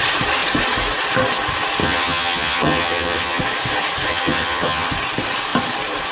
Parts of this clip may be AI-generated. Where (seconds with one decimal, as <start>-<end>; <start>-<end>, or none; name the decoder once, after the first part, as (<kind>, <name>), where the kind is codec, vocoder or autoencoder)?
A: 1.8-3.4 (vocoder, HiFi-GAN); 4.1-4.9